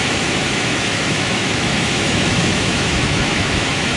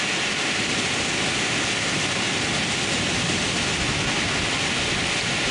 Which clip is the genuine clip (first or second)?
second